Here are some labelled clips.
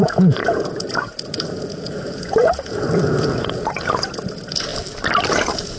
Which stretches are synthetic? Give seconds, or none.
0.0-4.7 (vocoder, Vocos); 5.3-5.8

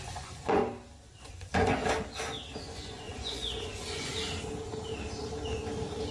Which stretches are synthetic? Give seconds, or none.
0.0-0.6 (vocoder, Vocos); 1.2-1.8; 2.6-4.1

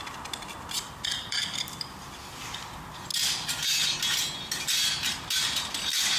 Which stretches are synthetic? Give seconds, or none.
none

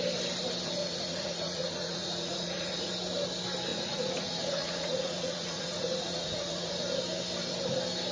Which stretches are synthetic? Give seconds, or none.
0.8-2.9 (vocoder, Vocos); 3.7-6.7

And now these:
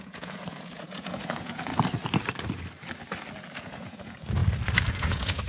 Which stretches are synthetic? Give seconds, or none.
0.0-1.7 (vocoder, Vocos); 3.6-4.4; 4.9-5.5

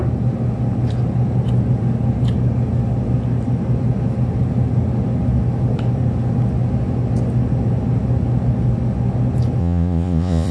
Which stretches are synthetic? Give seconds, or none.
9.6-10.5 (vocoder, Vocos)

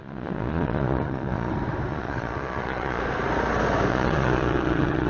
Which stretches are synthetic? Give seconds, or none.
0.0-1.5 (vocoder, Vocos); 1.9-3.0; 3.9-5.1

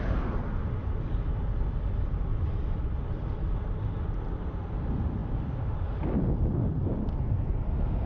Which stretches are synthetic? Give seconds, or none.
none